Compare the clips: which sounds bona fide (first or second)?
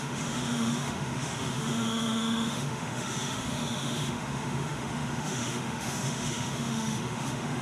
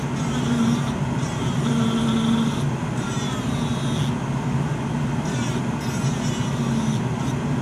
second